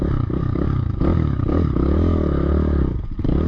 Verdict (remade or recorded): remade